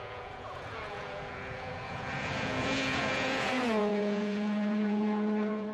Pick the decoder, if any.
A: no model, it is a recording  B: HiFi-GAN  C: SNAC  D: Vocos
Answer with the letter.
D